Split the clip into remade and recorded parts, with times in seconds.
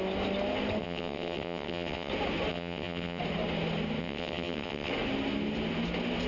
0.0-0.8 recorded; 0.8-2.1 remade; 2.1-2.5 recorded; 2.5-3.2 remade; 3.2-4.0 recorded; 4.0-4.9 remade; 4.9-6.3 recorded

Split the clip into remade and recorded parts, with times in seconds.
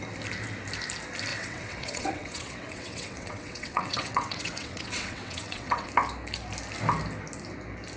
0.0-1.3 recorded; 1.3-5.9 remade; 5.9-8.0 recorded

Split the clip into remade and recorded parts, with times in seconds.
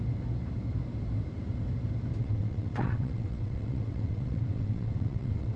0.0-2.2 recorded; 2.2-5.6 remade